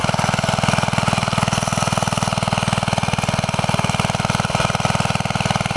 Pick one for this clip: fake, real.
real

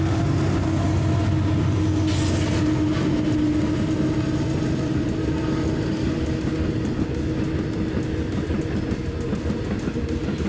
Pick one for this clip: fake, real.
real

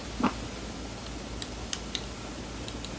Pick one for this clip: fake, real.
real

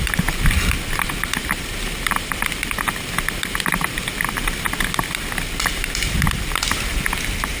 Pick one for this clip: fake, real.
real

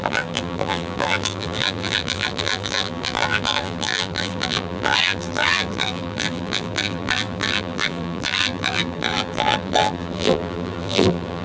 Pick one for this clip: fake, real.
fake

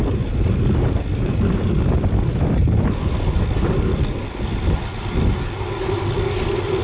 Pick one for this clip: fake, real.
real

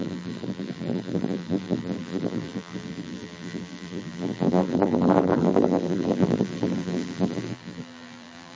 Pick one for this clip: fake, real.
fake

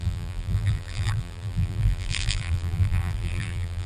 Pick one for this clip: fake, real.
fake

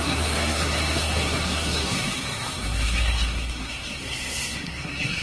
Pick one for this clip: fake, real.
fake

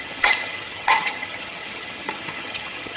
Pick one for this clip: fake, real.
fake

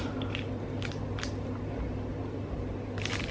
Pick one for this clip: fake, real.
real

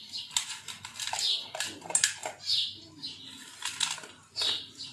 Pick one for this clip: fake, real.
real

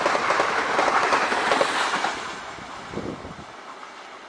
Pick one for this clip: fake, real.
real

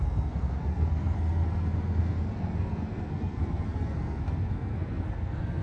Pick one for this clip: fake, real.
fake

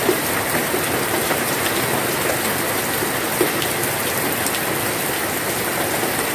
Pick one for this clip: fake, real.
real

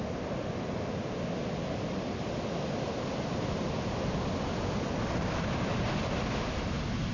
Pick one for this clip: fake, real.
real